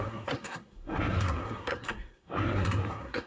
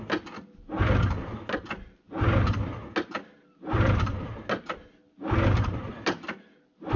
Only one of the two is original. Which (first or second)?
second